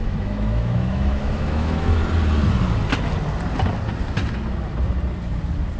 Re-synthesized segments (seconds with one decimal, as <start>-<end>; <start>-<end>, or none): 0.0-2.0